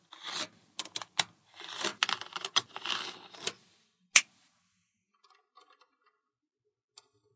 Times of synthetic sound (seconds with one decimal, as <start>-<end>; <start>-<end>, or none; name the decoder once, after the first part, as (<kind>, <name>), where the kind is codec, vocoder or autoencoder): none